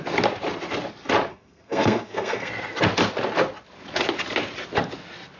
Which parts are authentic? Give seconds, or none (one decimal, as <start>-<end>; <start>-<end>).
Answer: 0.0-1.3; 2.5-5.4